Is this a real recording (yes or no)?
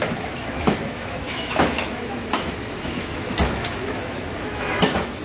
no